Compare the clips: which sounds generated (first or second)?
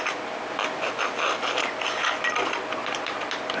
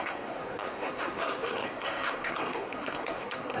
second